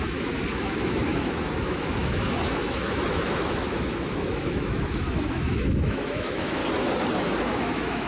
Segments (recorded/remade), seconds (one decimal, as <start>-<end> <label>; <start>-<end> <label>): 0.0-6.6 remade; 6.6-7.4 recorded; 7.4-8.1 remade